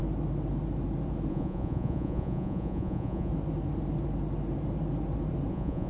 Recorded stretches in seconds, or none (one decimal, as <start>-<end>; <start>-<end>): 0.0-1.3; 3.3-5.5